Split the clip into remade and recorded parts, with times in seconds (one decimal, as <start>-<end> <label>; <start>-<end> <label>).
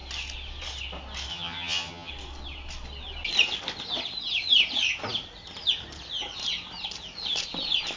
0.0-1.3 recorded; 1.3-2.1 remade; 2.1-8.0 recorded